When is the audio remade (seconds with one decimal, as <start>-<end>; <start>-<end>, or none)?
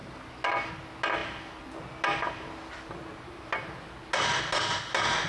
none